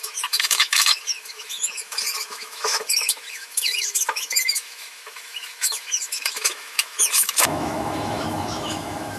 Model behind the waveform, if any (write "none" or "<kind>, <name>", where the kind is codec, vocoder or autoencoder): autoencoder, DAC-VAE